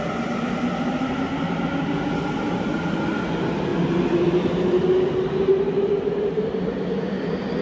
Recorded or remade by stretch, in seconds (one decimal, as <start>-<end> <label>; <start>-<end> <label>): 0.0-7.6 recorded